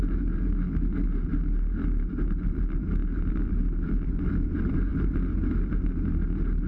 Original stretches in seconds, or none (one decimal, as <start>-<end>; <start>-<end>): 0.0-6.7